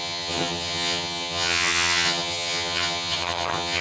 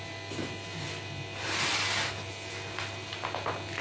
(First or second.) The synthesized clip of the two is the first